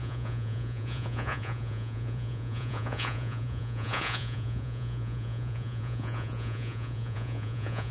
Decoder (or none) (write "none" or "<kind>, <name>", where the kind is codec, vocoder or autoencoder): vocoder, Vocos